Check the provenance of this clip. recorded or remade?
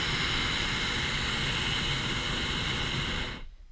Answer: recorded